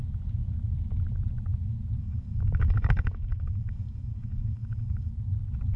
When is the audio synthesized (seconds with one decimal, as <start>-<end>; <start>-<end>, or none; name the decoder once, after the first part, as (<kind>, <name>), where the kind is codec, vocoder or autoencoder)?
2.0-5.1 (codec, DAC)